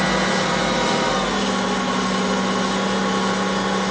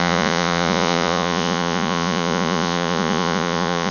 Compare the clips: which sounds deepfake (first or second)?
second